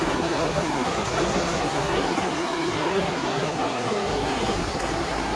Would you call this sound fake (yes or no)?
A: yes